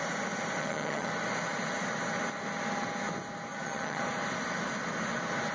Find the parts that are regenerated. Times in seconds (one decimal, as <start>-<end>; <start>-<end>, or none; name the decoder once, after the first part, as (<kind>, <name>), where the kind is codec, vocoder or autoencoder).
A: 0.6-1.1 (vocoder, HiFi-GAN); 3.5-4.0